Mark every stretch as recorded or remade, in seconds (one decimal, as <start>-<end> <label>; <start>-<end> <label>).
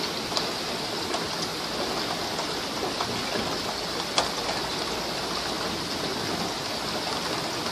0.0-7.7 recorded